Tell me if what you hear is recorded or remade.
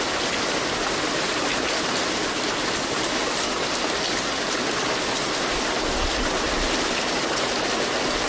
recorded